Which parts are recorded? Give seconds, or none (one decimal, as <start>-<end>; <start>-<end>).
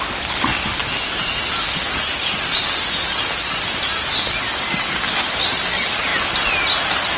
0.0-7.2